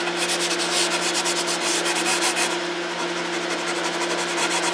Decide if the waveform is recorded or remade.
recorded